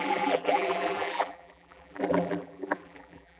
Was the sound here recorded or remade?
remade